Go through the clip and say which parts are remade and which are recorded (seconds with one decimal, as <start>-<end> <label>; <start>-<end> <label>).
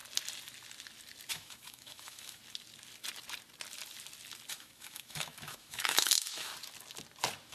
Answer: 0.0-1.3 recorded; 1.3-2.4 remade; 2.4-4.5 recorded; 4.5-6.5 remade; 6.5-7.5 recorded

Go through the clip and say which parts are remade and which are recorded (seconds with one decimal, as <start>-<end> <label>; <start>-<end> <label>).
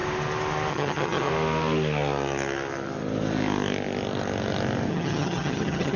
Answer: 0.0-0.7 recorded; 0.7-1.3 remade; 1.3-4.9 recorded; 4.9-6.0 remade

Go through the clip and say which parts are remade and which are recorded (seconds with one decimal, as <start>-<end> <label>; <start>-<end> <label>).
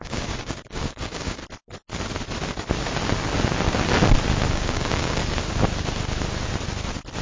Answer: 0.0-1.4 remade; 1.4-4.5 recorded; 4.5-5.2 remade; 5.2-7.2 recorded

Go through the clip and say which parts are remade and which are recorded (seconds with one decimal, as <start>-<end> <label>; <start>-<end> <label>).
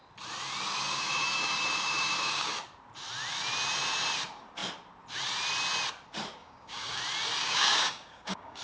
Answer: 0.0-0.9 recorded; 0.9-2.5 remade; 2.5-6.4 recorded; 6.4-7.0 remade; 7.0-7.4 recorded; 7.4-8.6 remade